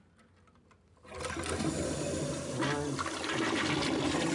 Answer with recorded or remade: recorded